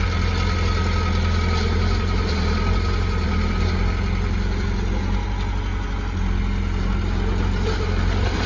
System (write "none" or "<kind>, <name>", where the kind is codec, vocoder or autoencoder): none